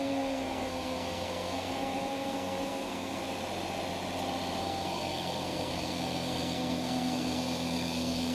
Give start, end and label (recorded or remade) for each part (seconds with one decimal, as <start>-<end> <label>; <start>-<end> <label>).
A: 0.0-3.2 remade; 3.2-4.6 recorded; 4.6-8.3 remade